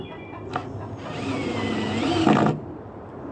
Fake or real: real